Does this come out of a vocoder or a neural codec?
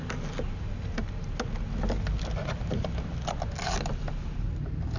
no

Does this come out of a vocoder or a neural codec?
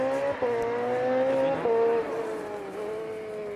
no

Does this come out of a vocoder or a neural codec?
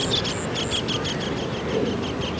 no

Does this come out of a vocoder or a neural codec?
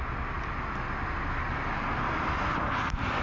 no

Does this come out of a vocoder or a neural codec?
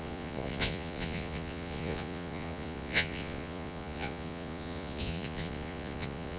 yes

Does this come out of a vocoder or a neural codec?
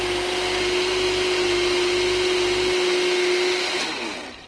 no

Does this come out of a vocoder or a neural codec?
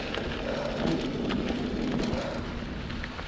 no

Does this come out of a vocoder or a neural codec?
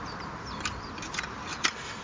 no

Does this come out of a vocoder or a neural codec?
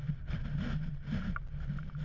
no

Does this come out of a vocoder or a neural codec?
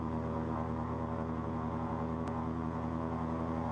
yes